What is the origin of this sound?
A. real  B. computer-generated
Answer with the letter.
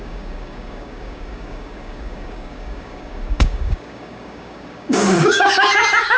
B